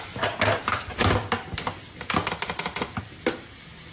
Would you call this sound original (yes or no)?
yes